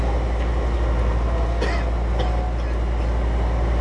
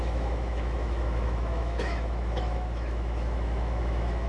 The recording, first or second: first